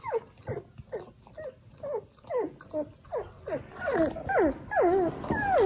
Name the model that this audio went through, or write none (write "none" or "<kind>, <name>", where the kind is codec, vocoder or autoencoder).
none